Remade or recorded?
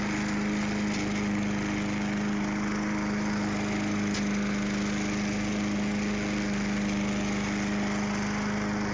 recorded